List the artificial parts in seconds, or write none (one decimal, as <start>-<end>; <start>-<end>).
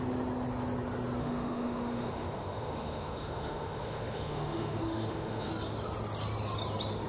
1.2-5.5